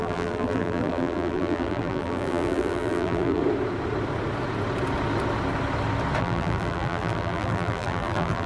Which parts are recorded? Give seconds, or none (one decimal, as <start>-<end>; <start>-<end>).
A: 3.4-6.2